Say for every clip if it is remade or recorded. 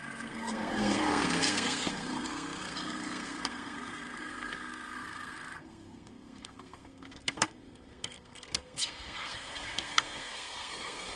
remade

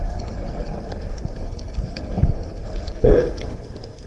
remade